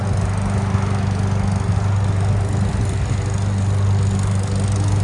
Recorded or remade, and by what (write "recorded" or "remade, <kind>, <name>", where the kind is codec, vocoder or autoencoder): recorded